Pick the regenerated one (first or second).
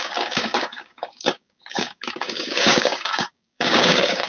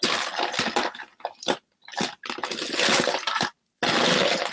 first